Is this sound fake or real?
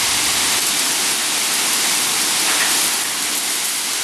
real